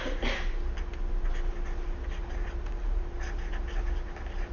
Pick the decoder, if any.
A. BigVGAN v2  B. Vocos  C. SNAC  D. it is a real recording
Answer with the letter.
D